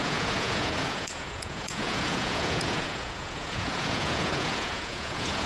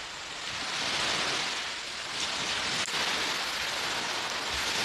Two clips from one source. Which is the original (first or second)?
second